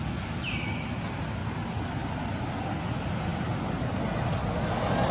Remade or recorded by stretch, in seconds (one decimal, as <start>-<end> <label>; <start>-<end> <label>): 0.0-5.1 recorded